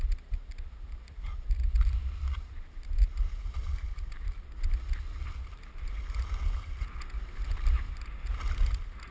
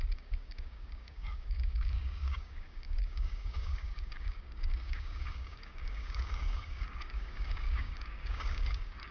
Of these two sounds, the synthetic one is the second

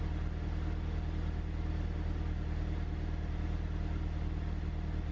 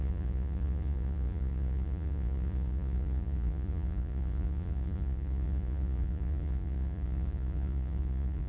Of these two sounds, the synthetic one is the second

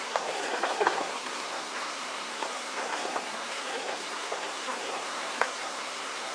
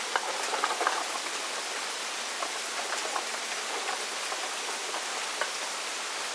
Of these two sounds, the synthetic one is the first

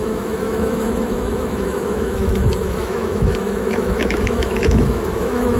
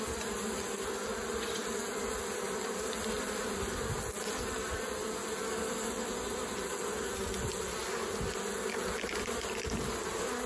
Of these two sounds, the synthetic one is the first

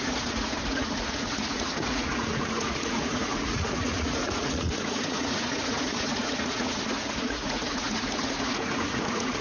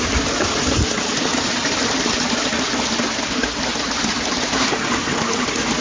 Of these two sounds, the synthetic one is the first